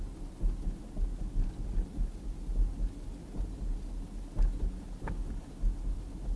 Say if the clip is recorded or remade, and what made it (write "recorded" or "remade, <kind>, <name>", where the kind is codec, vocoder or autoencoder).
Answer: recorded